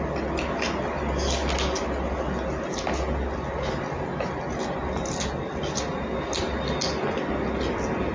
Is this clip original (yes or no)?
yes